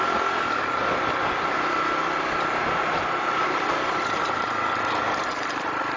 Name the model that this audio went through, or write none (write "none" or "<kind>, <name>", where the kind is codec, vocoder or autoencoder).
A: none